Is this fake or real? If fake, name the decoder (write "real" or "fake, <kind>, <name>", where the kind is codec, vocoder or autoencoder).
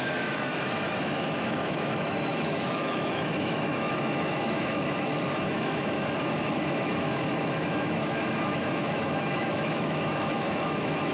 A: fake, autoencoder, DAC-VAE